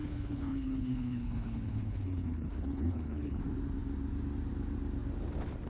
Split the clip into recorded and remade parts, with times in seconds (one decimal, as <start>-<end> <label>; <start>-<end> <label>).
0.0-3.4 remade; 3.4-5.7 recorded